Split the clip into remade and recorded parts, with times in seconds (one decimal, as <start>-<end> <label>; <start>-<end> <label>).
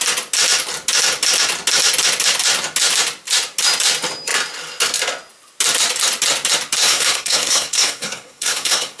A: 0.0-6.8 recorded; 6.8-9.0 remade